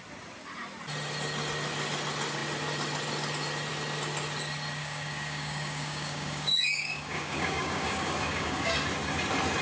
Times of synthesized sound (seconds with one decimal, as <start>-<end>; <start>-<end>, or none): 4.8-8.7